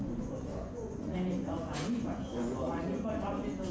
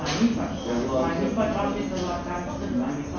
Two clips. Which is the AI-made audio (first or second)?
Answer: first